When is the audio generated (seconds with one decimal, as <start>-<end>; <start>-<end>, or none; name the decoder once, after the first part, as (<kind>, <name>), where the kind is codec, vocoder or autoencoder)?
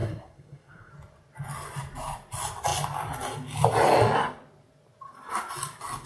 0.0-0.9 (codec, SNAC)